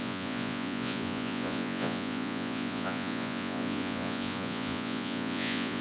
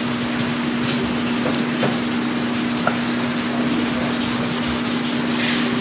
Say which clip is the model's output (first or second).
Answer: first